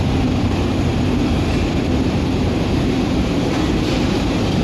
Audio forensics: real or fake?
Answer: fake